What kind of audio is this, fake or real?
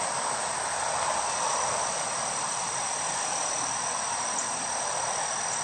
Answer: real